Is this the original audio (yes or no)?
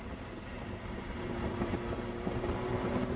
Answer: no